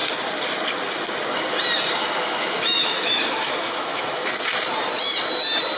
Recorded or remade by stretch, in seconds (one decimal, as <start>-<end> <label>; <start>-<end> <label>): 0.0-2.0 recorded; 2.0-4.3 remade; 4.3-5.8 recorded